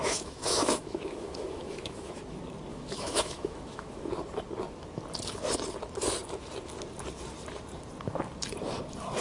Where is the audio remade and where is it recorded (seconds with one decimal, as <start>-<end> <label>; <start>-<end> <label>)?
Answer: 0.0-2.2 remade; 2.2-2.7 recorded; 2.7-4.1 remade; 4.1-9.2 recorded